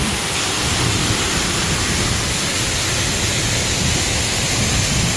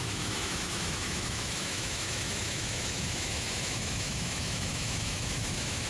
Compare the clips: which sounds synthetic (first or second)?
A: second